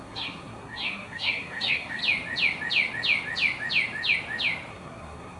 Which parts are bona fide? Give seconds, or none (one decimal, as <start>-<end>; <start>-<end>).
2.0-4.7